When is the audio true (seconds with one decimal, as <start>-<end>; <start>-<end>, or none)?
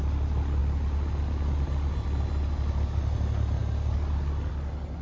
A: 0.0-5.0